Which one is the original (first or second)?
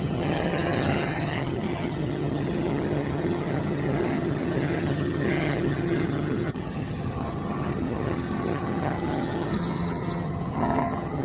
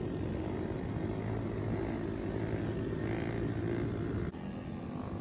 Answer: second